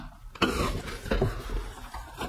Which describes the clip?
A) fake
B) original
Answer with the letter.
B